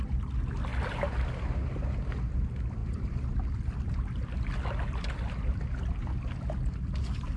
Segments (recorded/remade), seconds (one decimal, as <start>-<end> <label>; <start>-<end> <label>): 0.0-7.4 recorded